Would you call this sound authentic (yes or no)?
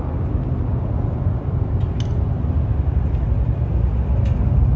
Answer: yes